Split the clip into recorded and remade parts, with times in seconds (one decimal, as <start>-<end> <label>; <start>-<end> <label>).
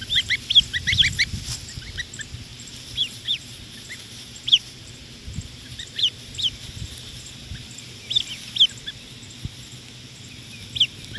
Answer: 0.0-2.5 recorded; 2.5-7.2 remade; 7.2-11.2 recorded